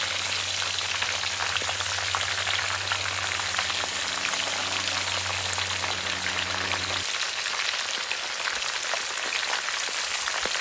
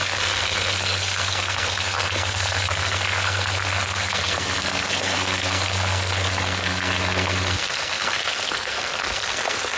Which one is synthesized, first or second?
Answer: second